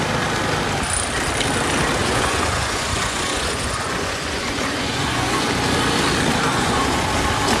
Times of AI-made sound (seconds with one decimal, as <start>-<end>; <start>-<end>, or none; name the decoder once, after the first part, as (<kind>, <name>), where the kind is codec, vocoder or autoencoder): 2.0-5.5 (vocoder, Vocos); 6.5-7.1